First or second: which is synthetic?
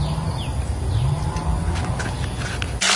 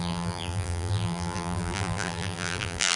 second